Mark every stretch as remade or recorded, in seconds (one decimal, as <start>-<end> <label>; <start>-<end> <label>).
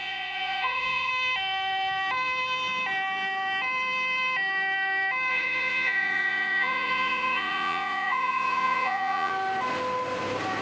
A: 0.0-1.1 remade; 1.1-5.3 recorded; 5.3-9.3 remade; 9.3-10.6 recorded